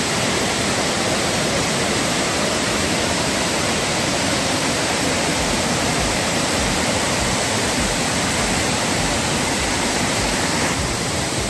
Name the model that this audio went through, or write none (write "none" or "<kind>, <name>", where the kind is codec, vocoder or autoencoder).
vocoder, BigVGAN v2